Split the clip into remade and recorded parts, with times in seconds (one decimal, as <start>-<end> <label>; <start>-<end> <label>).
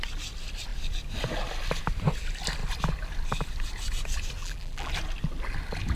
0.0-4.4 recorded; 4.4-4.9 remade; 4.9-6.0 recorded